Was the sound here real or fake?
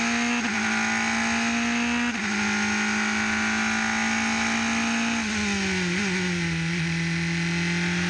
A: real